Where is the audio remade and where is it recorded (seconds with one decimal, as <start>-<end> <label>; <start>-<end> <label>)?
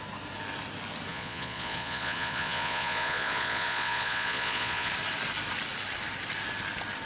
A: 0.0-1.1 recorded; 1.1-4.9 remade; 4.9-7.1 recorded